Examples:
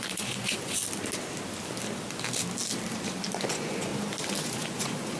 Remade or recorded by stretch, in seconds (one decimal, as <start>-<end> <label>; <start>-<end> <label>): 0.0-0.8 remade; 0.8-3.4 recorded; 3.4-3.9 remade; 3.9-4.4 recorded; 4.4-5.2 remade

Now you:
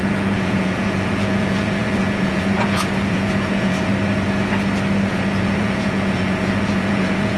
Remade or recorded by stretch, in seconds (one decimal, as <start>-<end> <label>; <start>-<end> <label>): 0.0-3.9 remade; 3.9-5.1 recorded; 5.1-7.4 remade

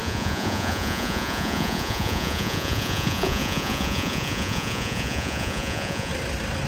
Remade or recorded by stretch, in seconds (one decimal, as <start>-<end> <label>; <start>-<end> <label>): 0.0-6.1 remade; 6.1-6.7 recorded

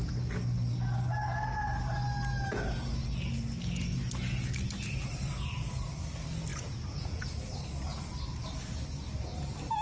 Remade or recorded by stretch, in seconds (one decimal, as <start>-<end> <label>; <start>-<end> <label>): 0.0-6.5 recorded; 6.5-7.2 remade; 7.2-9.8 recorded

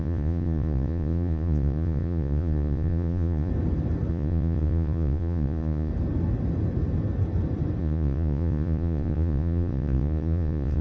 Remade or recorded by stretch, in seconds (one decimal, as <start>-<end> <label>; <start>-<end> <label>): 0.0-3.5 remade; 3.5-4.1 recorded; 4.1-5.9 remade; 5.9-7.8 recorded; 7.8-10.8 remade

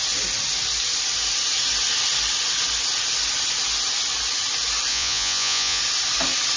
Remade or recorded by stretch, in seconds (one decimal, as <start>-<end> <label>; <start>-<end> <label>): 0.0-4.9 recorded; 4.9-5.8 remade; 5.8-6.6 recorded

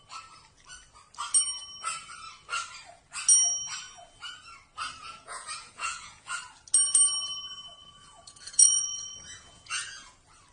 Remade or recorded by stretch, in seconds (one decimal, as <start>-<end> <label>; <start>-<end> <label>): 0.0-5.0 recorded; 5.0-6.4 remade; 6.4-7.8 recorded; 7.8-10.1 remade; 10.1-10.5 recorded